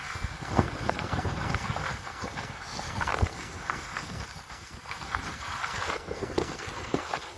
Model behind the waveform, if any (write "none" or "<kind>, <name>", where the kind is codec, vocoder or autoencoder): codec, SNAC